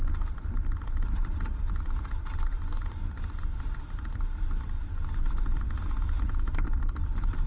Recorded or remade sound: remade